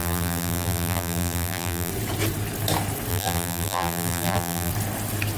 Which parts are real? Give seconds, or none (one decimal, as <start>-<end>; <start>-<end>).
1.9-3.1; 4.7-5.4